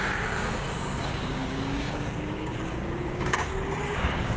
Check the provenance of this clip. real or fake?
fake